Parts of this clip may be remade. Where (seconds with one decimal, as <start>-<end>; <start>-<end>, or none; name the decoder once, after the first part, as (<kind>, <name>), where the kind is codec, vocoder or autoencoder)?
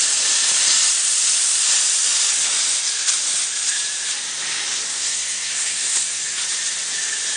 4.9-6.2 (codec, SNAC)